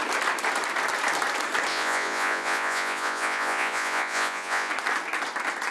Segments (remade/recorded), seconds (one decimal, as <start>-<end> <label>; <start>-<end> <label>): 0.0-1.7 recorded; 1.7-4.7 remade; 4.7-5.7 recorded